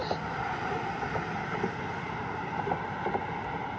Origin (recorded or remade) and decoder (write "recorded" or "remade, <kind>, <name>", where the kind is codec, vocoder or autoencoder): recorded